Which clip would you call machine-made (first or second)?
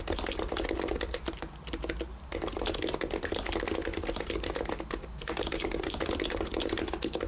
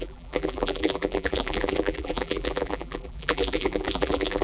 second